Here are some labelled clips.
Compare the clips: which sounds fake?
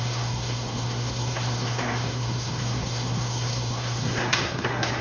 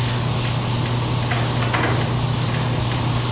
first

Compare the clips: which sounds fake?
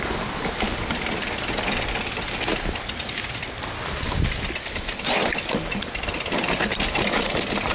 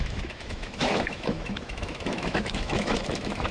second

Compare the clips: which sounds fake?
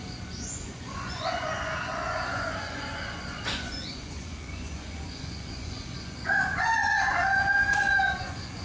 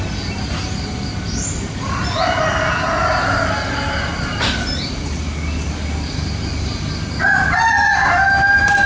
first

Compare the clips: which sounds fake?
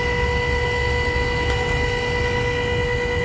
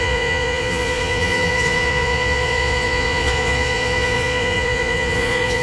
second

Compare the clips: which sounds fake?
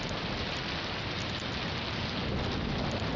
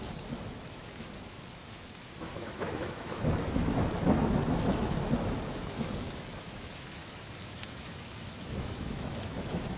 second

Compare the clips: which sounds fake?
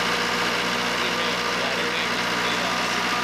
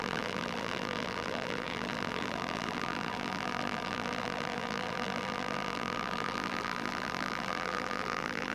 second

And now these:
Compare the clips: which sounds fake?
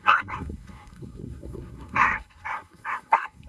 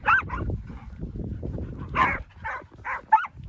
first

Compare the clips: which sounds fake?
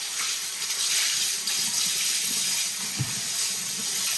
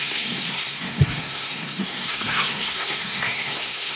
second